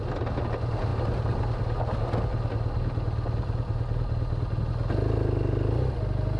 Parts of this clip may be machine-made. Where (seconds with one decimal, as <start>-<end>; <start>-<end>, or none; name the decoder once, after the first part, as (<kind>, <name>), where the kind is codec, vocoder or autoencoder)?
none